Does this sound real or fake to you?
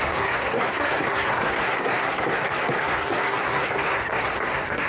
fake